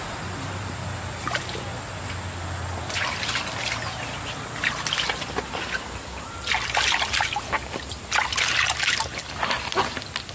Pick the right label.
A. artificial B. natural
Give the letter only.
B